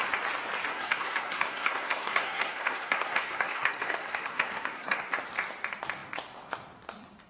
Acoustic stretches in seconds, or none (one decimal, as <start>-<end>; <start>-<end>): 0.0-0.7; 5.0-7.3